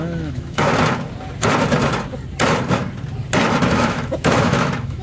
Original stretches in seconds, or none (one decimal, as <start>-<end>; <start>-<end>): 0.7-3.7